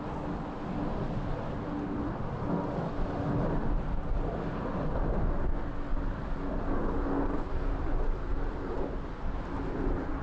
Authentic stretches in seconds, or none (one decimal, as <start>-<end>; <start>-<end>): 0.0-10.2